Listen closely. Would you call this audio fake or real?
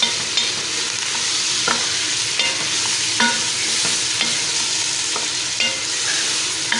real